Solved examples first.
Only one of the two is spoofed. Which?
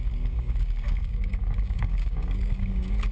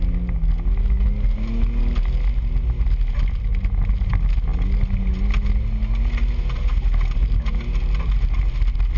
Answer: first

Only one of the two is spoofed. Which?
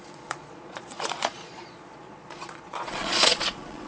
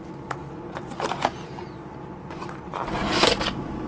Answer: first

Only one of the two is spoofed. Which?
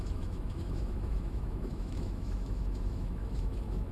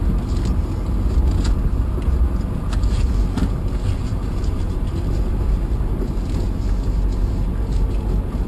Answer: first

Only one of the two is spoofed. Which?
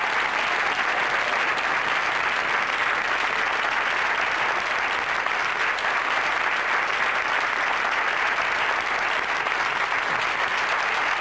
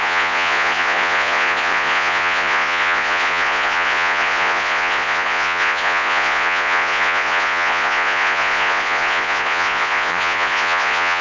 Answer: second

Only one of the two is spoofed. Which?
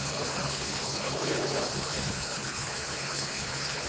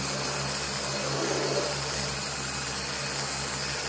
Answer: first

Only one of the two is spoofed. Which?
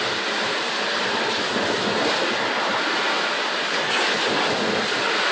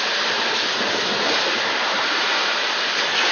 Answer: second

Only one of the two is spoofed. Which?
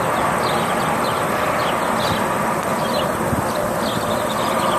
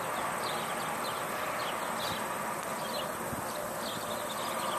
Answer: first